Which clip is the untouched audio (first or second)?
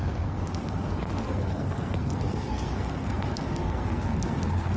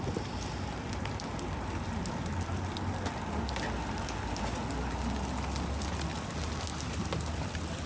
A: second